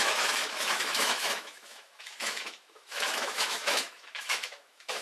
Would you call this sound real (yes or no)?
no